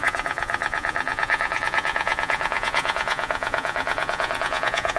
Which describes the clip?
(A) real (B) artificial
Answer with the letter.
B